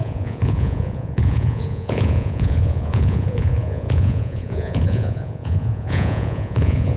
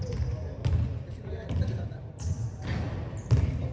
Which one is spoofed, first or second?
first